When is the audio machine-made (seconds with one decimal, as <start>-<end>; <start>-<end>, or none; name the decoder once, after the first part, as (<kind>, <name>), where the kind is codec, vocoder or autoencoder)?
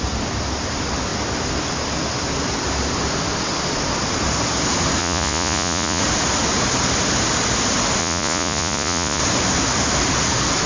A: 5.0-6.0 (vocoder, Vocos); 8.0-9.2